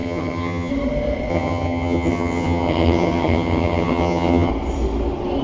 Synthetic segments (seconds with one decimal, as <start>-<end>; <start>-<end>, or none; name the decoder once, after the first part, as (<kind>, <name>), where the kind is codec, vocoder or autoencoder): 0.0-0.7 (vocoder, HiFi-GAN); 1.3-4.5